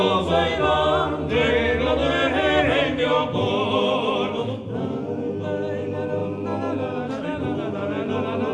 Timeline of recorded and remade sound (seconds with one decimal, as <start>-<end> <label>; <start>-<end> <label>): 0.0-8.5 recorded